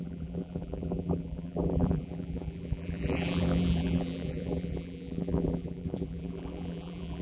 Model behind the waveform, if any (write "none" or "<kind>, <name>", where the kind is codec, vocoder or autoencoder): vocoder, BigVGAN v2